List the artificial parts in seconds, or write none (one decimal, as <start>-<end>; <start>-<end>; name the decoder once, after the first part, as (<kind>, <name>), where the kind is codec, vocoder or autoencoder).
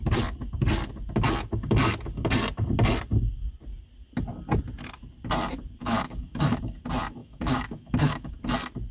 5.8-6.6 (autoencoder, DAC-VAE); 7.2-8.3